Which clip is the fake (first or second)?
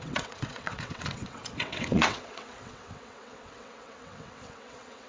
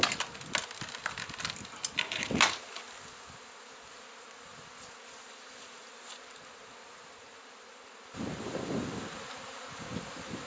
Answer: first